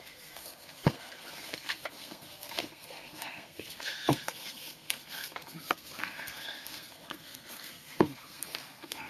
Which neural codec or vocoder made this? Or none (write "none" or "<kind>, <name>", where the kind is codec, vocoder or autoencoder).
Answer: codec, SNAC